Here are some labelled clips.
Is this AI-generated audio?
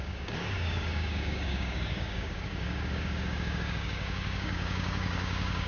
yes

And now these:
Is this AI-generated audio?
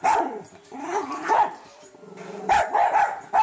no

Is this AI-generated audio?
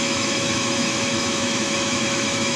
yes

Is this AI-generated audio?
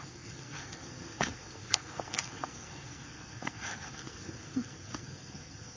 yes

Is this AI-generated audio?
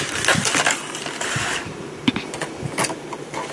no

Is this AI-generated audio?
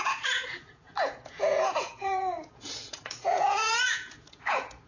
yes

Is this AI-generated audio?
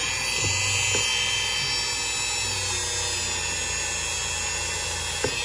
no